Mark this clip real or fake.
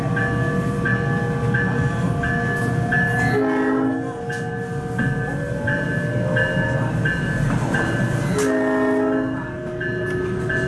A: real